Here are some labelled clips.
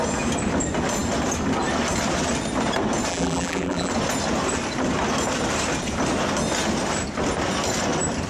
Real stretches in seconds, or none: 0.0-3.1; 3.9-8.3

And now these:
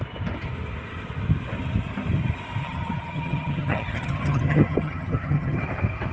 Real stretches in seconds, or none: 0.0-2.6; 5.6-6.1

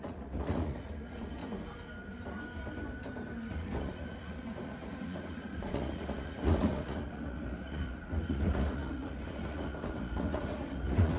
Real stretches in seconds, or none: 1.4-3.5